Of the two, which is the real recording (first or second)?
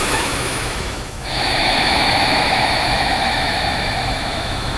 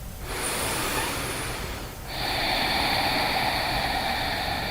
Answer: second